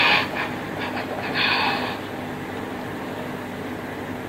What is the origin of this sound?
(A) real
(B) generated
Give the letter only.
A